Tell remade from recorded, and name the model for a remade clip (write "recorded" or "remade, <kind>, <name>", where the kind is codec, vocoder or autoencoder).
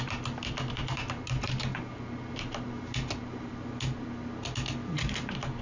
recorded